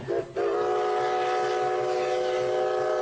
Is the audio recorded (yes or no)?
yes